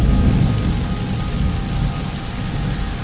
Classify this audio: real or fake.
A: real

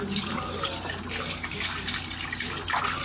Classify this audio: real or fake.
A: fake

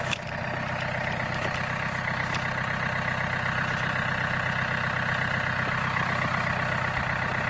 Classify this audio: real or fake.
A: real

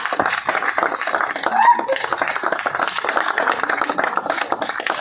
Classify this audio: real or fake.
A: real